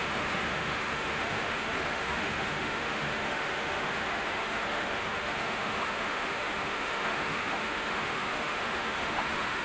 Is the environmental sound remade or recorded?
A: remade